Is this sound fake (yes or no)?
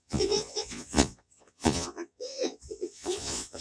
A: yes